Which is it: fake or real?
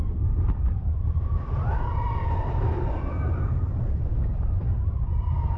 fake